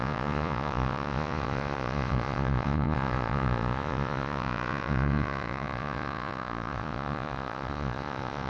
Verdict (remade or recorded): remade